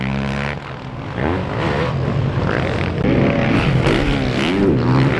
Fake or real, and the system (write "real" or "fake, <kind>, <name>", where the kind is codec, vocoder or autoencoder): real